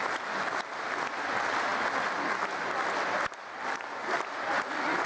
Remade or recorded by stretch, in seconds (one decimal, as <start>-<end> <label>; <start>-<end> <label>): 0.0-5.1 recorded